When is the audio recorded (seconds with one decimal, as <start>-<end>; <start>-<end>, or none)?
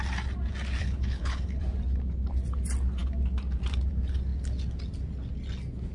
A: 0.0-0.8; 1.6-5.9